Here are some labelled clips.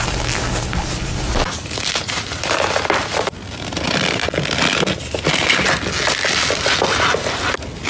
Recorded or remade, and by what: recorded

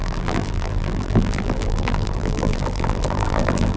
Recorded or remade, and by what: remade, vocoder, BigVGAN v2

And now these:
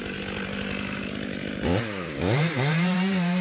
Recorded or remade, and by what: remade, vocoder, BigVGAN v2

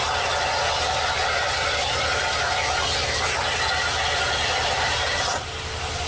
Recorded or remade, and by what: recorded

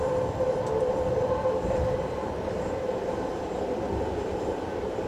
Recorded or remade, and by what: remade, vocoder, BigVGAN v2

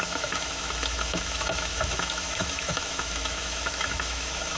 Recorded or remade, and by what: remade, autoencoder, DAC-VAE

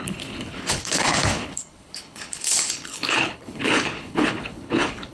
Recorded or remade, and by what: remade, codec, HILCodec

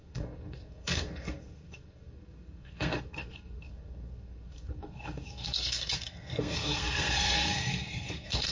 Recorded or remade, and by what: remade, codec, SNAC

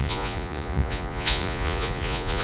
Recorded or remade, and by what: remade, vocoder, Vocos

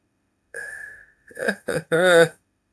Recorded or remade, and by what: remade, autoencoder, DAC-VAE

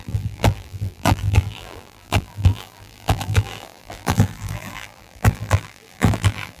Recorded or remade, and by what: remade, vocoder, BigVGAN v2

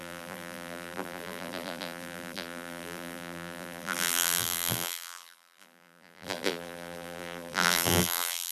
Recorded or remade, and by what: remade, vocoder, BigVGAN v2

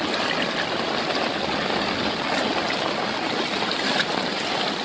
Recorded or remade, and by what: recorded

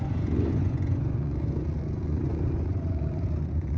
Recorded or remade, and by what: remade, vocoder, Vocos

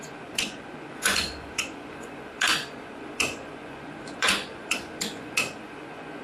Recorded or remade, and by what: remade, vocoder, Vocos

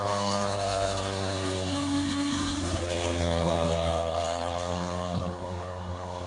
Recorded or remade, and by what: remade, codec, SNAC